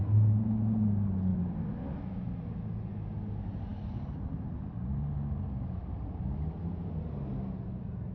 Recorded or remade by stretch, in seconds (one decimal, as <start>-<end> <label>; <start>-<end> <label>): 0.0-8.1 recorded